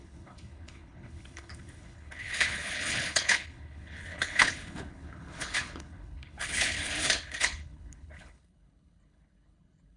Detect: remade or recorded remade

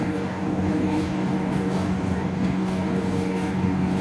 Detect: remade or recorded remade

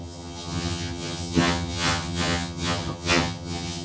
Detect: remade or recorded remade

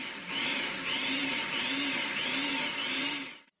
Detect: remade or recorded remade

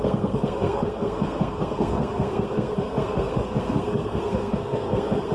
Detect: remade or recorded remade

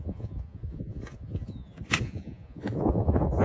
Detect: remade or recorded remade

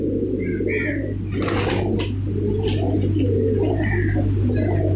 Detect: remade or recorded recorded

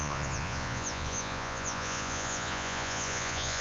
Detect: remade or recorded remade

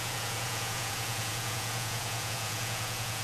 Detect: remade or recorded remade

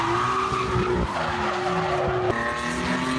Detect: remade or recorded recorded